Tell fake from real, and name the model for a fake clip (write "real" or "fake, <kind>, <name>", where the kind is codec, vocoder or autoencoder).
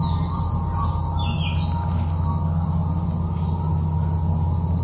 real